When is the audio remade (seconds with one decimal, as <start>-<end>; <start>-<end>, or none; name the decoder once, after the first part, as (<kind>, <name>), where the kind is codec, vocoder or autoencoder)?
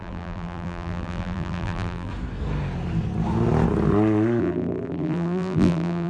0.0-2.1 (vocoder, BigVGAN v2); 4.4-6.1